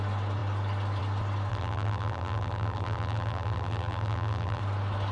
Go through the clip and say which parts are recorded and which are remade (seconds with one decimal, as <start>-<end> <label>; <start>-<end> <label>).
0.0-1.5 recorded; 1.5-4.6 remade; 4.6-5.1 recorded